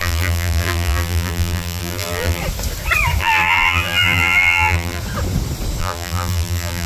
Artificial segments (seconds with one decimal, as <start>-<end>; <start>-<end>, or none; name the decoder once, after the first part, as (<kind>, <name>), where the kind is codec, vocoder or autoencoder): 0.0-2.4 (vocoder, BigVGAN v2); 3.2-5.0; 5.8-6.9